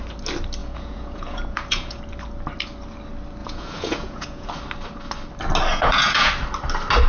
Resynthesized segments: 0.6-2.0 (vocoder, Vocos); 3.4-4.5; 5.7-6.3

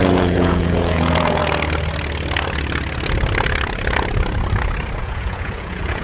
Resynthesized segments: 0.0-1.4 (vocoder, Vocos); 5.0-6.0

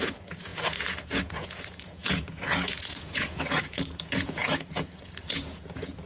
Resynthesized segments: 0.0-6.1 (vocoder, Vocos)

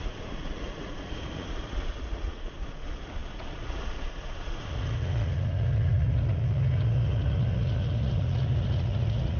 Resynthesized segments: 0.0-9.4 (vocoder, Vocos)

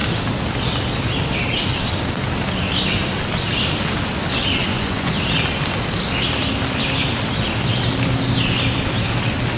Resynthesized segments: 4.6-5.1 (vocoder, Vocos)

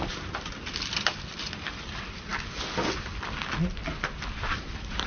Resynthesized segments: none

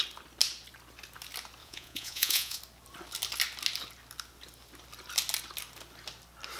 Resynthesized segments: 1.6-2.6 (vocoder, Vocos)